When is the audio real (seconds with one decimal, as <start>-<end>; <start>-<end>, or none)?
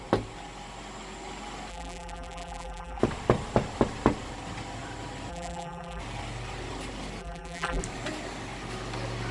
0.0-1.7; 3.0-5.3; 6.0-7.2; 7.8-9.3